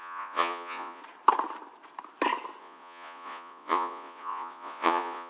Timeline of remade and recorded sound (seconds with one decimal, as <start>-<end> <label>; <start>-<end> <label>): 0.0-1.0 remade; 1.0-2.6 recorded; 2.6-5.3 remade